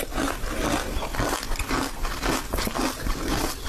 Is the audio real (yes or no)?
yes